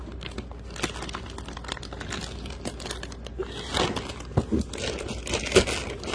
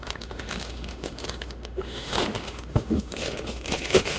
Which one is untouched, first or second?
first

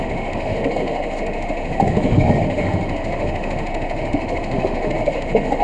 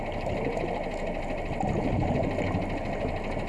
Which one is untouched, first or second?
second